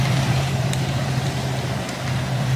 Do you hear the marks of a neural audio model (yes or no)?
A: yes